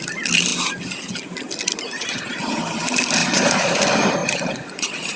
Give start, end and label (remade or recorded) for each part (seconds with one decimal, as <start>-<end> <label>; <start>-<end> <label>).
0.0-3.2 recorded; 3.2-3.7 remade; 3.7-4.2 recorded; 4.2-5.2 remade